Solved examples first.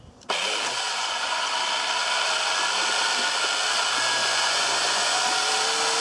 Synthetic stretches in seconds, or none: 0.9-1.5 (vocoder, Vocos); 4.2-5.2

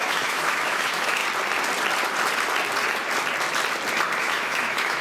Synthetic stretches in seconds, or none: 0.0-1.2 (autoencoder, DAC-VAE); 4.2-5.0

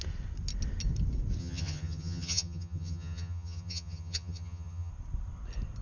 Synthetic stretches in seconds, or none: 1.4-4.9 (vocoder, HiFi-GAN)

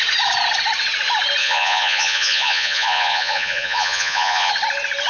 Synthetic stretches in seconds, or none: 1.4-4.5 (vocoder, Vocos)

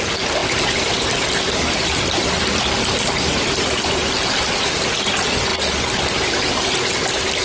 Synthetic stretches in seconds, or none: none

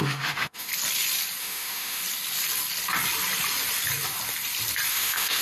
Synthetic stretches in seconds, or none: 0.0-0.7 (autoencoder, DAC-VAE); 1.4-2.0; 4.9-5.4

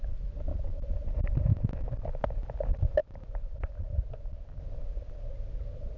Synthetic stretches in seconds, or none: 0.5-1.1 (vocoder, BigVGAN v2); 3.0-4.6